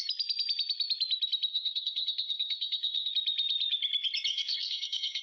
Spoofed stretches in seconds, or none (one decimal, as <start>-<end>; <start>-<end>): 1.5-3.1; 4.3-5.2